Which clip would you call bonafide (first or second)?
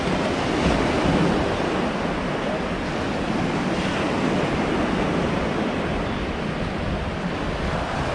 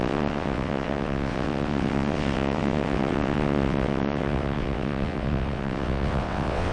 first